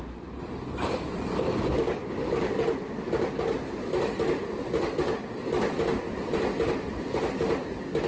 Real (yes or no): yes